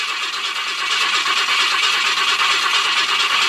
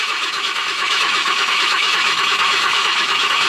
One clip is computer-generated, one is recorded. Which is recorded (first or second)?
first